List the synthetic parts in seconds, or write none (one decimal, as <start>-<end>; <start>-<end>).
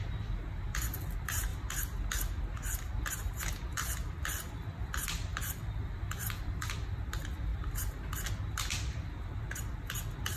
5.3-6.7; 7.5-8.1